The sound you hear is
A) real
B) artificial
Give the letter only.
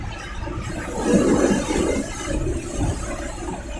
A